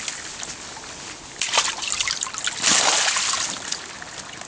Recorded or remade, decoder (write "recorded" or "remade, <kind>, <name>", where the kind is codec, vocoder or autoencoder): recorded